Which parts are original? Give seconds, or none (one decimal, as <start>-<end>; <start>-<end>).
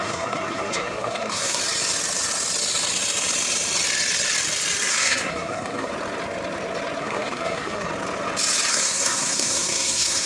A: 1.6-4.9; 5.9-7.0; 7.9-8.7